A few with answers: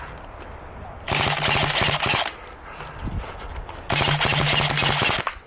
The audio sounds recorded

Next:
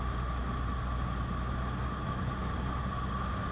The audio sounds recorded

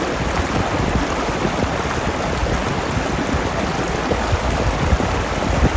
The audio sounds recorded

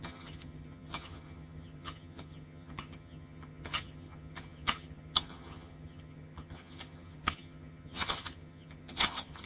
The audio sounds remade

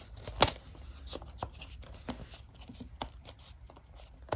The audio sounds recorded